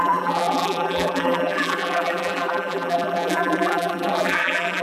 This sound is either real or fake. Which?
fake